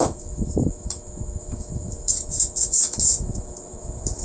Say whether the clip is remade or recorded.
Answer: remade